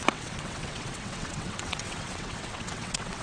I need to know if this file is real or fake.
fake